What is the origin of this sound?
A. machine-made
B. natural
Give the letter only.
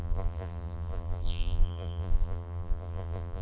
A